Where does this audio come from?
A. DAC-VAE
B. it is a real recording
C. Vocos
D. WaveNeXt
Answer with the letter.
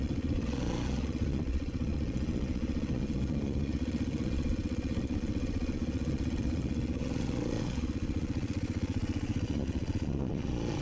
C